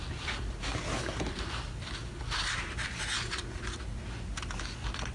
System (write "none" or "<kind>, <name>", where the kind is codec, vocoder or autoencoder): none